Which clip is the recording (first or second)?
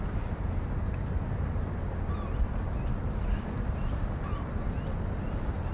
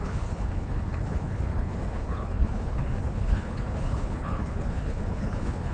first